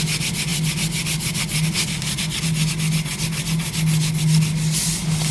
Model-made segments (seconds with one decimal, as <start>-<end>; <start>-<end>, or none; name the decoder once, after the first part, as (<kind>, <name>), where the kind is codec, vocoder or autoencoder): none